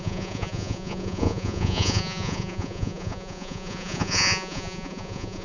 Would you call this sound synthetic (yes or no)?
yes